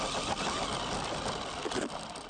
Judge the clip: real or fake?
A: real